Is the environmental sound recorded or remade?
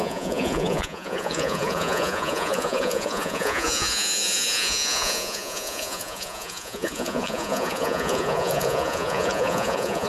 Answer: remade